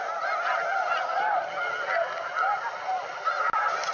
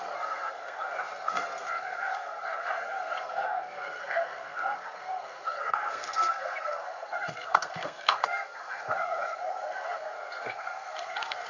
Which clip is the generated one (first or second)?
second